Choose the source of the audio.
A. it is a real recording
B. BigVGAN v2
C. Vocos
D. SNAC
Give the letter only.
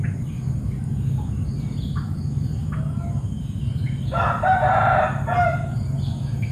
A